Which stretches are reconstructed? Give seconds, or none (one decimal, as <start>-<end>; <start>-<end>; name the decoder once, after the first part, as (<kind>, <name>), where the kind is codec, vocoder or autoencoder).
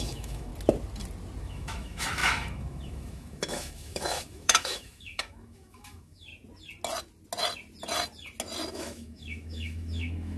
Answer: 0.0-0.5 (autoencoder, DAC-VAE); 1.4-6.3; 8.7-10.4